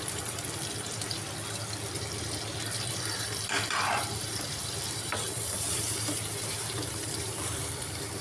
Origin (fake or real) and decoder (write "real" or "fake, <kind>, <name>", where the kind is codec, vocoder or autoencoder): fake, vocoder, BigVGAN v2